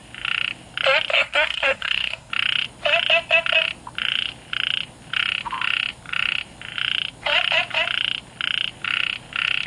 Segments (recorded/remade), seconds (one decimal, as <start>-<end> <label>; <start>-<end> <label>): 0.0-1.1 recorded; 1.1-2.3 remade; 2.3-9.7 recorded